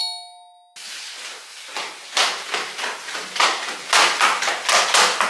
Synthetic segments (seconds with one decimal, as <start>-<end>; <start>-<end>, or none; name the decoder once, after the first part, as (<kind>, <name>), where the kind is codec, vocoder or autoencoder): none